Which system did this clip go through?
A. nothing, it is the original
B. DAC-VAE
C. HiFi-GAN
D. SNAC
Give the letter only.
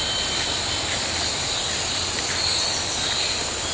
A